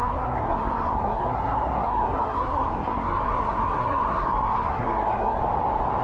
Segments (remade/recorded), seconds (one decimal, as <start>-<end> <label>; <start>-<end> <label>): 0.0-5.4 remade; 5.4-6.0 recorded